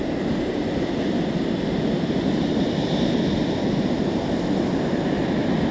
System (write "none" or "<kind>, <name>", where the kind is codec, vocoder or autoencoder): none